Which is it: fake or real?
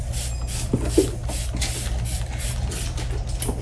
real